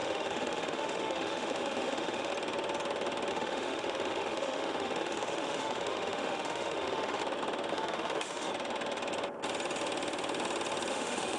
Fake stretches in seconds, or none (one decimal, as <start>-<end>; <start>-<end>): 0.0-2.3; 3.3-7.2; 7.7-8.5; 10.9-11.4